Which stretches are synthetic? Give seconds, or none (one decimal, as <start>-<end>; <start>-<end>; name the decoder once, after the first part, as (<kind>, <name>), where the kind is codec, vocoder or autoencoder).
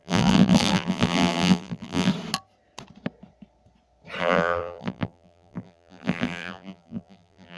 0.0-2.1 (vocoder, BigVGAN v2); 4.2-7.6